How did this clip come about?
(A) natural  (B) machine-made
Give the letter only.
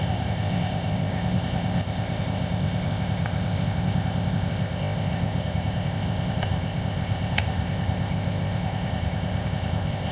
B